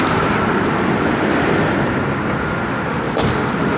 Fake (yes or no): no